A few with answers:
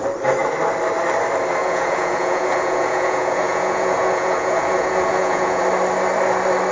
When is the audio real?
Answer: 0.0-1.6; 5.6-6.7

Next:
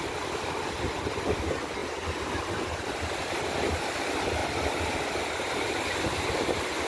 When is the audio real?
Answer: 0.0-6.9

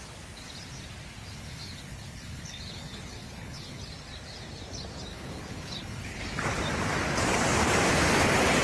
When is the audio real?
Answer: 0.0-1.2; 3.8-5.1; 6.2-8.6

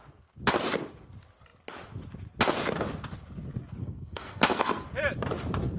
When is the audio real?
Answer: 0.0-3.8; 4.8-5.8

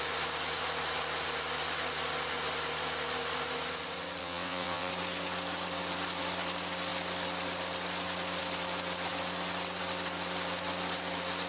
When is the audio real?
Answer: 0.0-4.2; 4.9-11.5

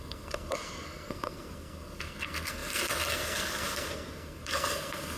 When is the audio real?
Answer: none